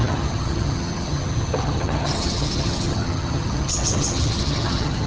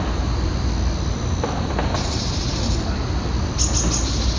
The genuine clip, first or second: second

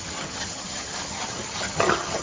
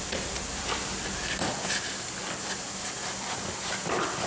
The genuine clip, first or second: second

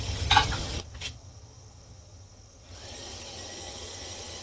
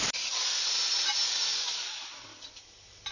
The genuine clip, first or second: second